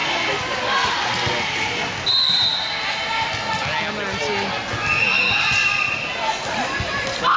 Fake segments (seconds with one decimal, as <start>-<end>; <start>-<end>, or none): none